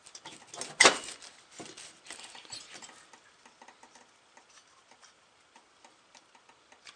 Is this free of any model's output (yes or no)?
yes